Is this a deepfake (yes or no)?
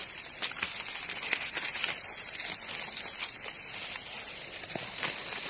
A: no